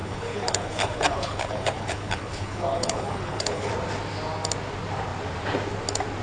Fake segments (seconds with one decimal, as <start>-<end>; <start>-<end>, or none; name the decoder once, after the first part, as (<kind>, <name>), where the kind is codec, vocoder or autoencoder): 0.0-3.7 (codec, HILCodec)